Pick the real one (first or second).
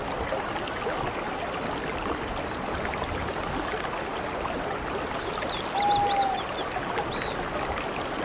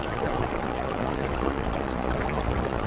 first